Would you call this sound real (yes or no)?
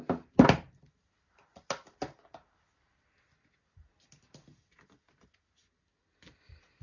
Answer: yes